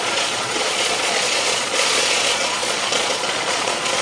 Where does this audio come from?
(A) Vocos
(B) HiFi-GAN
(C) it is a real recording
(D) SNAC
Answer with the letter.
A